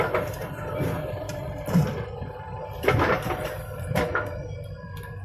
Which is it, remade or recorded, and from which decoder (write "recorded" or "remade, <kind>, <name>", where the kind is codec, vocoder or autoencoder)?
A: remade, vocoder, BigVGAN v2